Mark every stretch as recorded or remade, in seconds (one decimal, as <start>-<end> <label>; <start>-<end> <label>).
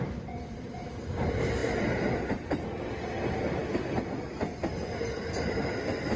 0.0-6.2 recorded